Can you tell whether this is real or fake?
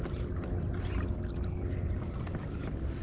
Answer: real